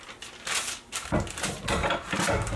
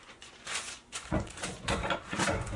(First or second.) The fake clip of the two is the second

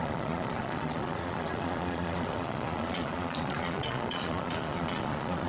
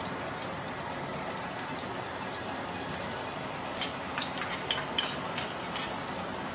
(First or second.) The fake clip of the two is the first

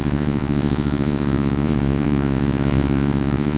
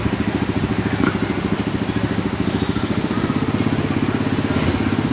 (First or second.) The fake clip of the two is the first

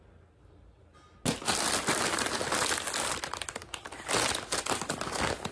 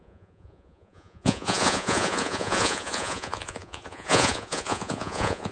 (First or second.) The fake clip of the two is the second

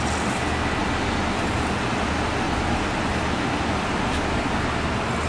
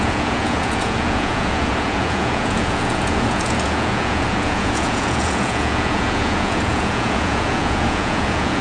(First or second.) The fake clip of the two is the second